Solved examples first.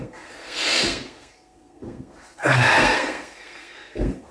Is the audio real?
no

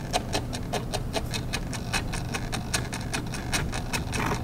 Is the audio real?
yes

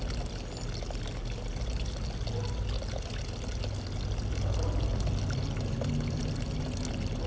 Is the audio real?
yes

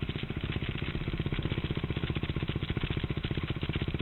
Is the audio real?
yes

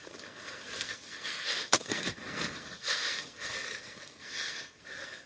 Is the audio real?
no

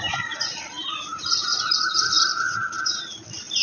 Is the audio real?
no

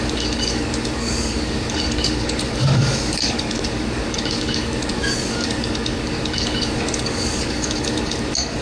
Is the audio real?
no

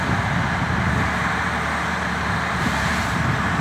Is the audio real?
no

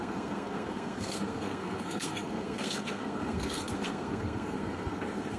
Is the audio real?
no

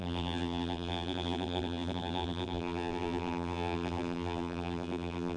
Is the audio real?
no